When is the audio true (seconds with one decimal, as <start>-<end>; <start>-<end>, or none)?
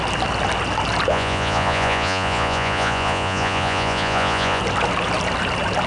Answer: 0.0-1.1; 4.6-5.9